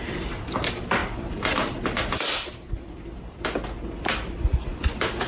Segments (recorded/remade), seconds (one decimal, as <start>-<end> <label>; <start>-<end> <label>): 0.0-5.3 recorded